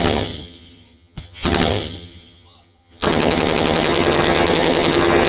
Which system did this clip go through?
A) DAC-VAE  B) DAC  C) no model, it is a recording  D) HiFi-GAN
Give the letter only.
D